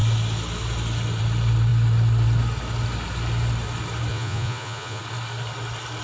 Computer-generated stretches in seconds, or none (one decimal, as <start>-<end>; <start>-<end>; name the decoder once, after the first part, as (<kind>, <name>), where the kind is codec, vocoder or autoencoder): 4.1-5.0 (vocoder, Vocos)